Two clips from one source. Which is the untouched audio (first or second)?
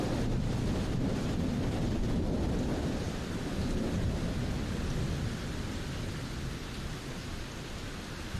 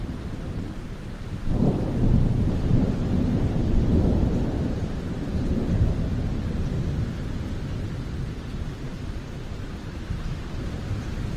first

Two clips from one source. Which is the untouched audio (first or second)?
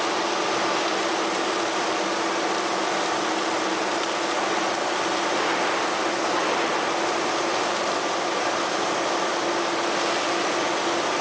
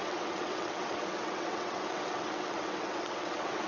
first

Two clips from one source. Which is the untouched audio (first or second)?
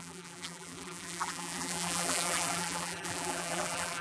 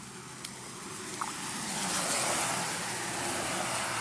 second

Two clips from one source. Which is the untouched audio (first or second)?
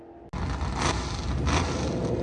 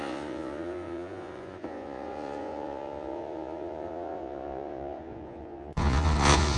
first